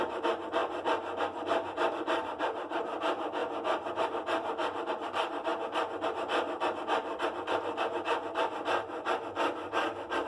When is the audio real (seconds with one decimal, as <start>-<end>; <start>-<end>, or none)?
0.6-1.9; 3.4-4.0; 5.5-10.3